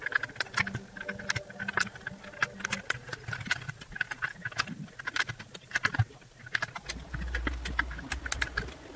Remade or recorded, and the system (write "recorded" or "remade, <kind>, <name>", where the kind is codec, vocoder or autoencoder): recorded